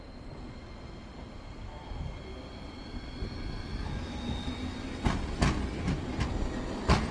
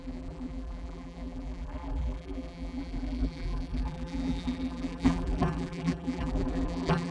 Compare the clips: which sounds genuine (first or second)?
first